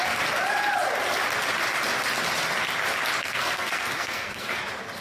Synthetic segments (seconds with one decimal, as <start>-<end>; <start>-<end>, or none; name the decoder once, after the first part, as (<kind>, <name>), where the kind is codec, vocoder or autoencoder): 3.2-4.6 (codec, SNAC)